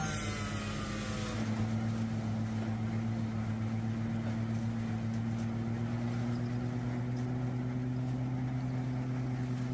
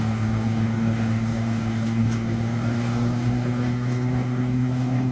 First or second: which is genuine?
first